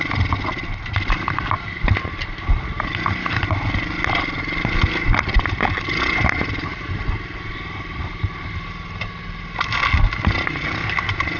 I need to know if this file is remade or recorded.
recorded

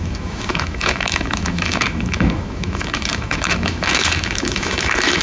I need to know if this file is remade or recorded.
remade